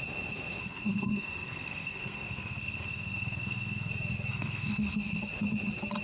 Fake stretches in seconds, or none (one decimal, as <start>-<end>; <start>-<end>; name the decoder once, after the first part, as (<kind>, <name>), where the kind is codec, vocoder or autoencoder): 0.6-3.9 (codec, SNAC); 4.3-5.2